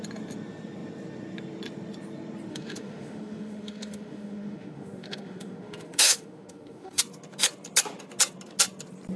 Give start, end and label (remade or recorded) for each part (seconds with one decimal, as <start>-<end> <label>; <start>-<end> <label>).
0.0-2.5 recorded; 2.5-7.0 remade; 7.0-9.2 recorded